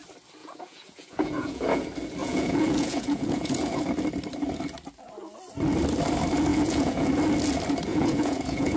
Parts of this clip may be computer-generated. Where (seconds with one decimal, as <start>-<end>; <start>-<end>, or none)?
0.4-1.8; 2.2-3.8; 6.5-7.1; 7.9-8.8